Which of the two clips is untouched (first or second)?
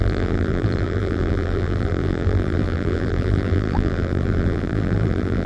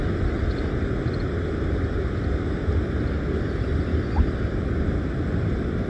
second